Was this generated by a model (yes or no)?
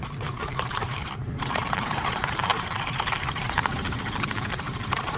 yes